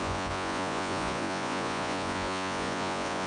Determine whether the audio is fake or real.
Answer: fake